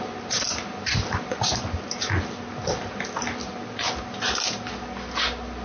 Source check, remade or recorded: recorded